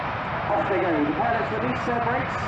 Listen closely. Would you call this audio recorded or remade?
recorded